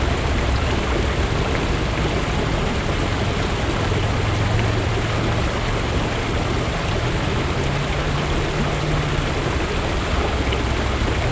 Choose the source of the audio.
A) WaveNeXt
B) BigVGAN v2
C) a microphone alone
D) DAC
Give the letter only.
C